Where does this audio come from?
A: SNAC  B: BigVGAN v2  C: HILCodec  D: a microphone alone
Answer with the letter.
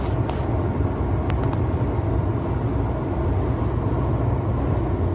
D